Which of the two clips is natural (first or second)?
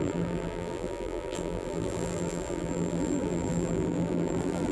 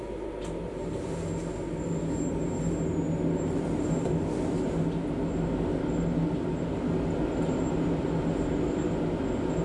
second